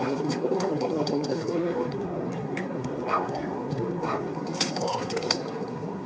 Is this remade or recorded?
remade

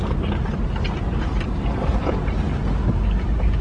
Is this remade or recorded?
recorded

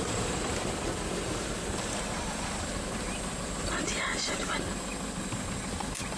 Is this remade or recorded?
recorded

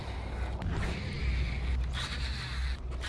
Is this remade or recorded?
recorded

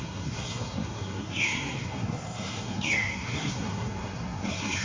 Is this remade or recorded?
remade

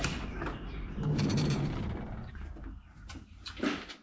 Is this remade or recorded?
recorded